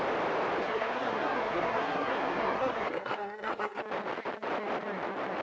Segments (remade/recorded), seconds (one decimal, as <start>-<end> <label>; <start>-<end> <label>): 0.0-0.6 recorded; 0.6-3.8 remade; 3.8-5.4 recorded